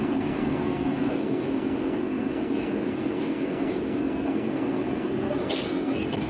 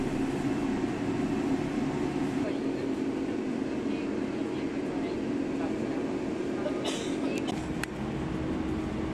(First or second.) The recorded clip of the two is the second